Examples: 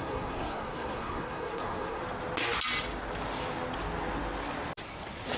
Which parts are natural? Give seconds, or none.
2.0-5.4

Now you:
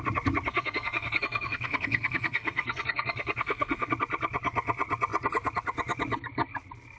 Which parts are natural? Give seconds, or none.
0.0-0.5; 3.9-7.0